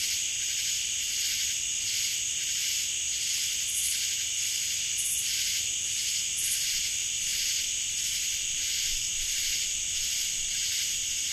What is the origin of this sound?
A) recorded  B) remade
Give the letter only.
A